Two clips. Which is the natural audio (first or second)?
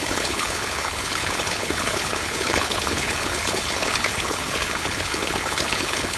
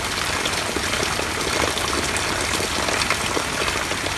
second